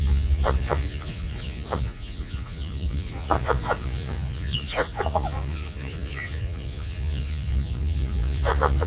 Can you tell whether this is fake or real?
fake